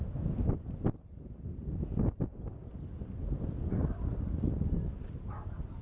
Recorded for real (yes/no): yes